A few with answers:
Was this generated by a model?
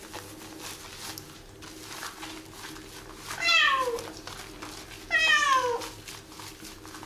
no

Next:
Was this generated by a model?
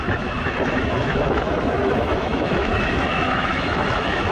yes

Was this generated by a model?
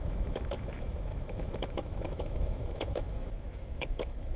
yes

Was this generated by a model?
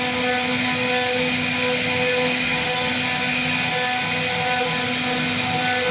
no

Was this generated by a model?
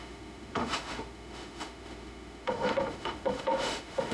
yes